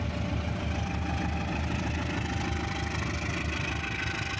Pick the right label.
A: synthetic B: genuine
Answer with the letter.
B